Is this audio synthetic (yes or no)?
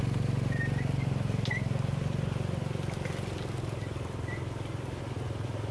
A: no